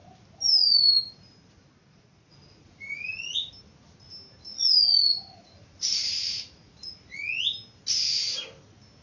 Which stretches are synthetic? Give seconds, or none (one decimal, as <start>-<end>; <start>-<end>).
1.9-3.5; 4.5-7.4